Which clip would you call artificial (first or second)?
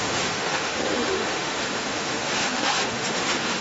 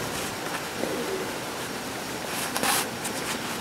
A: first